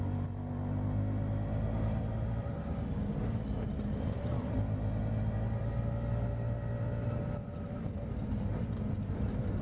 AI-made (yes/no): no